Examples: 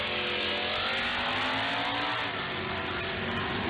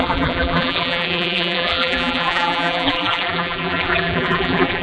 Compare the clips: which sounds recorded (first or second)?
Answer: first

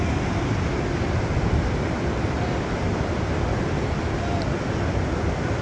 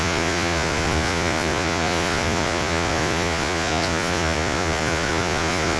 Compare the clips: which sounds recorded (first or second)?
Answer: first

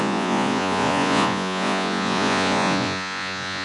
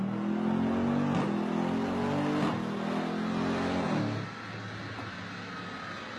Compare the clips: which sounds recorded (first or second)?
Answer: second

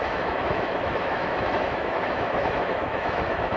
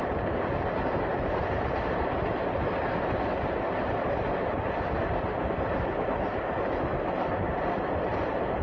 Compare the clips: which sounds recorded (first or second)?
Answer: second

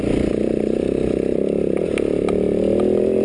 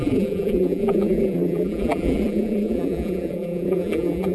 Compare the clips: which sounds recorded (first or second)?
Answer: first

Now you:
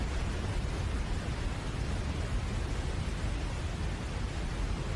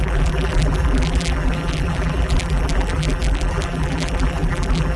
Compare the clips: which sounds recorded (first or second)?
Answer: first